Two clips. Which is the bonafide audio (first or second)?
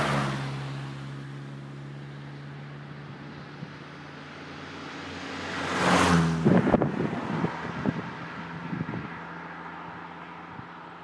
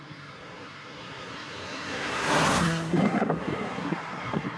first